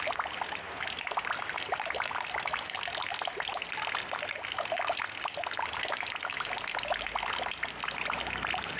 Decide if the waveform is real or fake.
real